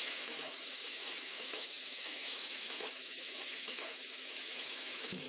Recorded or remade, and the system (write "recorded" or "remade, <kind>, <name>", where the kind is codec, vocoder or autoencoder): remade, autoencoder, DAC-VAE